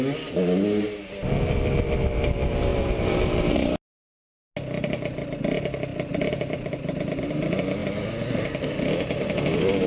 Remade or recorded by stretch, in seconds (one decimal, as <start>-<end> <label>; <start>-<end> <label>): 0.0-2.7 recorded; 2.7-3.5 remade; 3.5-5.9 recorded; 5.9-7.2 remade; 7.2-9.9 recorded

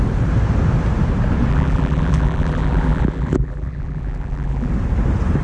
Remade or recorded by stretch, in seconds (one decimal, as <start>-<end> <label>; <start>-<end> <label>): 0.0-1.5 recorded; 1.5-4.7 remade; 4.7-5.4 recorded